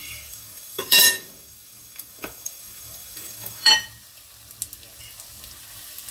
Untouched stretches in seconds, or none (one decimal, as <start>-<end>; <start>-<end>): 3.7-6.1